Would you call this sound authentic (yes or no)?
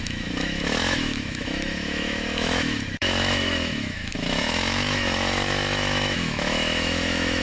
no